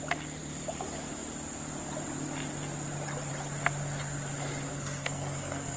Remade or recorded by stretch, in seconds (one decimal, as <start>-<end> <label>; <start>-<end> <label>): 0.0-4.7 recorded; 4.7-5.8 remade